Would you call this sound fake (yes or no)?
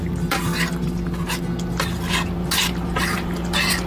no